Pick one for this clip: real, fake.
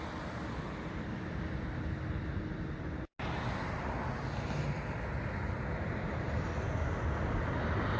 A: real